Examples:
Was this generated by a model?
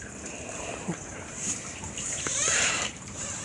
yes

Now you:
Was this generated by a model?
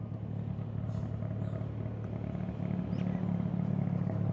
no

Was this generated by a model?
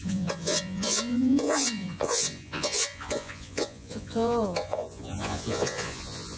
yes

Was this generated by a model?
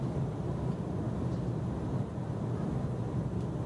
no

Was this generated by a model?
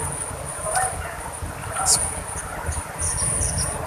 no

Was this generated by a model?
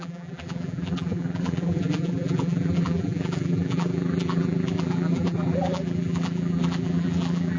yes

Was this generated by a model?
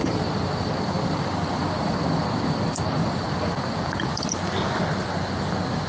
no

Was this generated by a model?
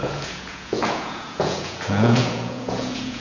yes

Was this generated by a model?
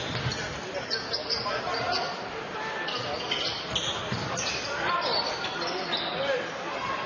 no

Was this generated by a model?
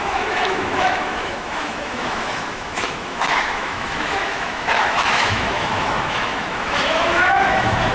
yes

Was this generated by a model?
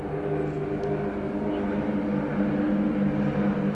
no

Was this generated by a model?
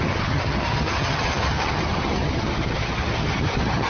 yes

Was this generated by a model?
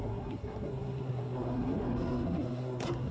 yes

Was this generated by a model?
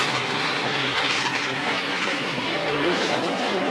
yes